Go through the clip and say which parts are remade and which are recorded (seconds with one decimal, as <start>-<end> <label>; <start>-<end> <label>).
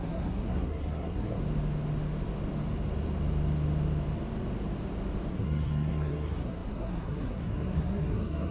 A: 0.0-1.4 remade; 1.4-5.3 recorded; 5.3-8.5 remade